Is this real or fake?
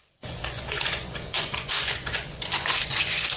fake